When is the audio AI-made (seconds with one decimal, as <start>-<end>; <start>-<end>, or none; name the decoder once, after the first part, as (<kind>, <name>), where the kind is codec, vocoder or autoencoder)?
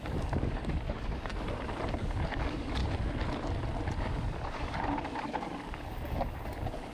0.0-1.3 (codec, DAC); 1.9-2.8; 4.0-6.9